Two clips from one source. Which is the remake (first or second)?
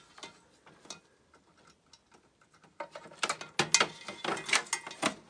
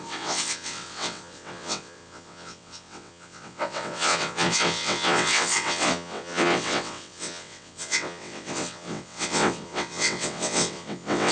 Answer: second